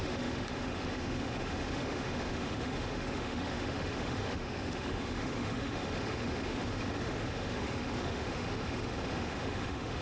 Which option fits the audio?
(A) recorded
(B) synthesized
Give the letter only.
B